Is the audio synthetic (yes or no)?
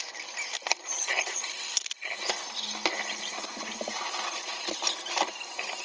yes